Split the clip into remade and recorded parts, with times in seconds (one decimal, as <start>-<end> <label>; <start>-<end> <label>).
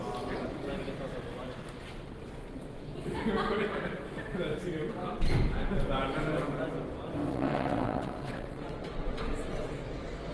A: 0.0-7.3 recorded; 7.3-9.7 remade; 9.7-10.3 recorded